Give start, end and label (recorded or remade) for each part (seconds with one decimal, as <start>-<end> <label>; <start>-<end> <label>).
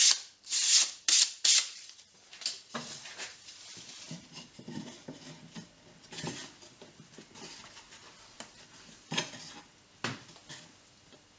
0.0-0.8 recorded; 0.8-5.1 remade; 5.1-11.4 recorded